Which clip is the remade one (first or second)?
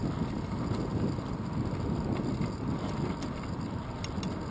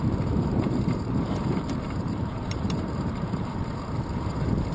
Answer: second